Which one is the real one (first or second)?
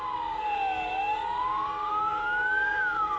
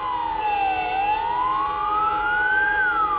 second